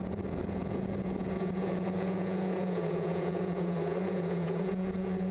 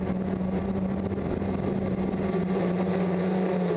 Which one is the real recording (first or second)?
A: second